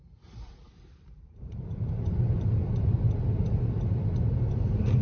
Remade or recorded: remade